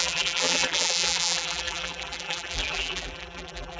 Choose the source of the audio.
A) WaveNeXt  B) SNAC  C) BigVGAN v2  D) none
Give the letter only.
C